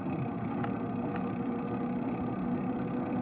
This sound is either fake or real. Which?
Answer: real